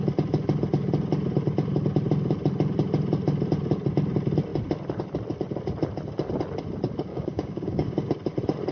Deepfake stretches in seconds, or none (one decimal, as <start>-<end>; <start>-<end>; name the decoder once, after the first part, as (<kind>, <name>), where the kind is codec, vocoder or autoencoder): 7.1-8.1 (codec, DAC)